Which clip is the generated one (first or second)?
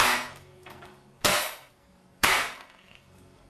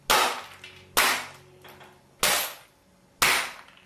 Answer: first